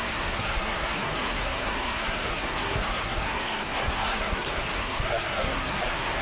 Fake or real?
fake